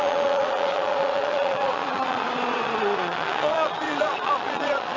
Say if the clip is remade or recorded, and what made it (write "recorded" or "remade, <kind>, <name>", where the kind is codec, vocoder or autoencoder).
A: remade, vocoder, Vocos